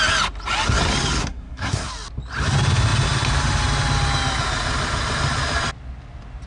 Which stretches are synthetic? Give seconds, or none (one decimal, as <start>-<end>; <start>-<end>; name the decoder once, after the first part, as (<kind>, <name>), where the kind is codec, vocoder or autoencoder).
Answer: 1.2-1.9 (codec, SNAC)